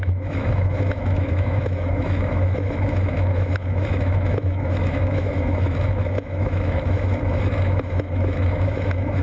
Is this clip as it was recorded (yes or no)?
no